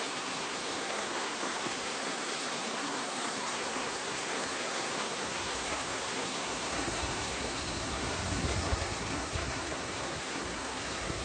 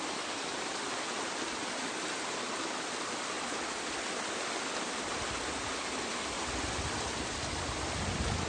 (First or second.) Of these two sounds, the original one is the second